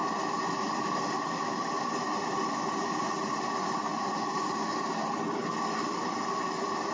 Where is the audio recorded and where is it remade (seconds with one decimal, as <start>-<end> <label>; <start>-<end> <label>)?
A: 0.0-6.9 recorded